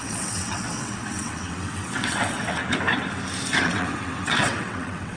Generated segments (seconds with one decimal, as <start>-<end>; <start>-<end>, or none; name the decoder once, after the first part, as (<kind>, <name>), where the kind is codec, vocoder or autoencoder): 0.0-2.6 (vocoder, WaveNeXt); 3.6-5.2